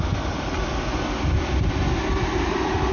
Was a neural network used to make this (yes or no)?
no